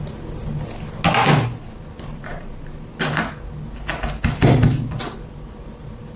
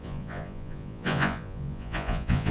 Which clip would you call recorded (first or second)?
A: first